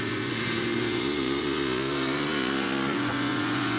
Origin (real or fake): fake